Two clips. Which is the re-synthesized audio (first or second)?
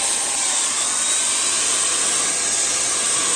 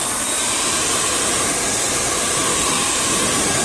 second